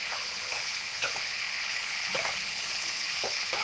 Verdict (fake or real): fake